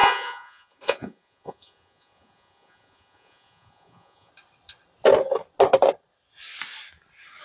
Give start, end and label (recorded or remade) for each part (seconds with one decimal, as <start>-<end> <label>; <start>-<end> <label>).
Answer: 0.0-4.3 remade; 4.3-7.4 recorded